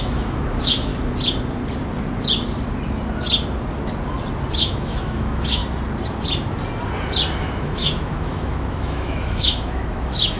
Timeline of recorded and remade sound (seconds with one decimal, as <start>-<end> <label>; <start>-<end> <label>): 0.0-0.9 remade; 0.9-4.5 recorded; 4.5-5.6 remade; 5.6-7.4 recorded; 7.4-10.4 remade